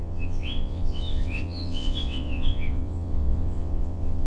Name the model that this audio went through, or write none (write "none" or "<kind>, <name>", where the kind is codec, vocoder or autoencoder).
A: vocoder, WaveNeXt